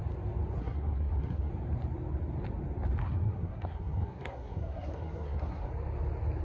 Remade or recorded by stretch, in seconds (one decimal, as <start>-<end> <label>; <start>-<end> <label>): 0.0-0.6 recorded; 0.6-1.5 remade; 1.5-3.0 recorded; 3.0-5.7 remade; 5.7-6.4 recorded